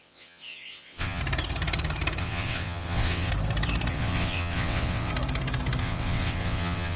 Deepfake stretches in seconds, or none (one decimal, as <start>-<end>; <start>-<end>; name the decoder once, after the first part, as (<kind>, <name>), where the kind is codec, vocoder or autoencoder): 0.0-1.2 (vocoder, WaveNeXt); 2.2-3.3; 3.9-5.1; 5.8-7.0